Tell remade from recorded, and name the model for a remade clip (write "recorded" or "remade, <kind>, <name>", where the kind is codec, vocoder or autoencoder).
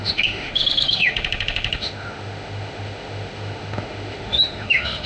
remade, autoencoder, DAC-VAE